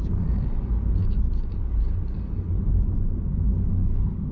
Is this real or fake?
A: real